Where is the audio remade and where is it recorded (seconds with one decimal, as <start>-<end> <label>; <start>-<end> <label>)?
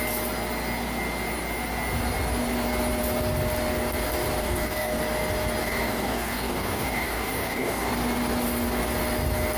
0.0-4.4 recorded; 4.4-5.0 remade; 5.0-5.6 recorded; 5.6-7.9 remade; 7.9-9.6 recorded